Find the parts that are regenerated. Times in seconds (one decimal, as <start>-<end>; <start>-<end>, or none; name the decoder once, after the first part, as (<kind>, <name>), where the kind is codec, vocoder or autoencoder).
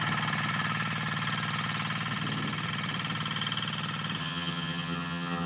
4.2-5.5 (vocoder, HiFi-GAN)